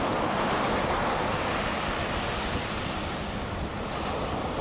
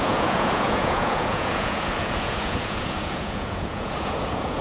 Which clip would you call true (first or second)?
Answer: first